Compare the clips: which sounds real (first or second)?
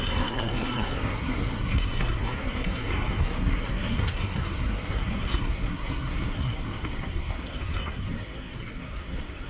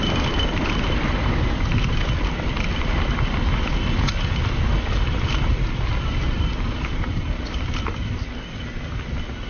second